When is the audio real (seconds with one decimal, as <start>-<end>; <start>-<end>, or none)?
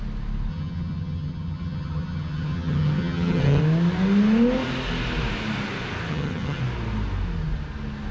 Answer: 0.0-0.5; 3.6-6.1; 6.6-8.1